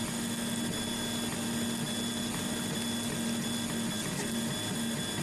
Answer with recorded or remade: recorded